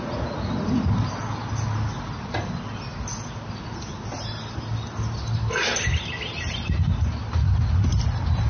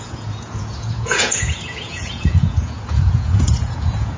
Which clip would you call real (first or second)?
first